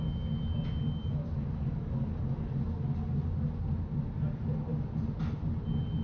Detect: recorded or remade recorded